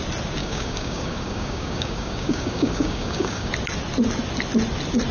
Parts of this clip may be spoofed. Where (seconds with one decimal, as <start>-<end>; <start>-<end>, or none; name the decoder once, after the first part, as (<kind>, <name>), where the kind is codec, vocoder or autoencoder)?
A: 0.4-3.5 (codec, DAC)

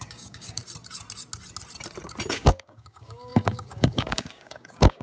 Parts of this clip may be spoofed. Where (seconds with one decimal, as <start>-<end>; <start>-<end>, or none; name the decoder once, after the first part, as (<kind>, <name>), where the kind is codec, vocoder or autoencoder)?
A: 0.0-0.6 (codec, DAC); 2.3-5.0